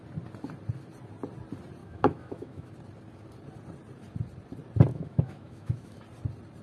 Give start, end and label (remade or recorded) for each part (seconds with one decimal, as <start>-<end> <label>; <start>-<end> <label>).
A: 0.0-1.8 recorded; 1.8-2.7 remade; 2.7-4.9 recorded; 4.9-6.0 remade; 6.0-6.6 recorded